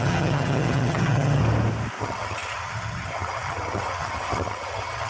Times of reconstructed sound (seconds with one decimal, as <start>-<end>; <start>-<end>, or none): 0.0-1.4; 2.0-5.1